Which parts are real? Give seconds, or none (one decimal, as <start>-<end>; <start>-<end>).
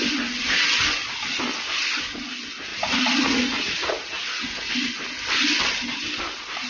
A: 0.0-2.7; 4.7-6.7